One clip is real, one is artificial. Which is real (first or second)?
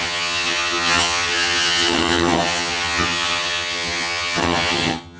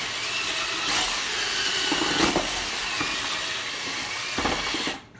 second